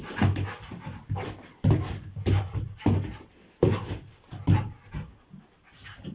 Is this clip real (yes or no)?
yes